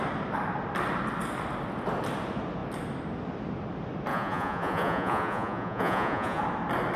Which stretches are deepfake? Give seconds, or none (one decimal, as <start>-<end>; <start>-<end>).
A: 4.1-6.4